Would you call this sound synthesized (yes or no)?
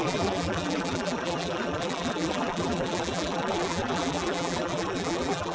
yes